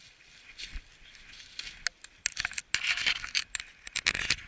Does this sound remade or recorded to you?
recorded